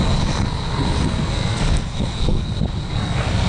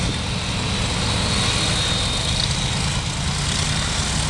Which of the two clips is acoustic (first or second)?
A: second